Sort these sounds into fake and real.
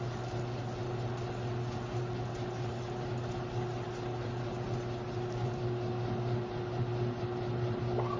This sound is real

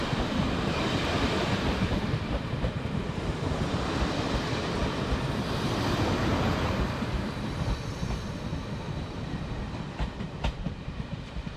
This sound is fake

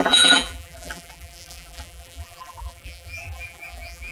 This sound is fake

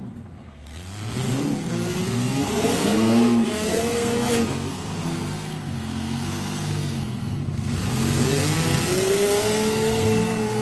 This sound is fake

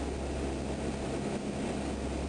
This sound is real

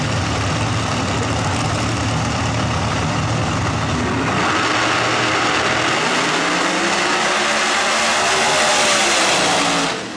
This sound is real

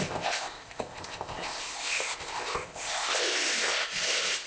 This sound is fake